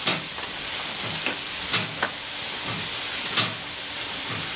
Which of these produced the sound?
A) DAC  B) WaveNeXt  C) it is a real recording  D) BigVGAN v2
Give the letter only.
C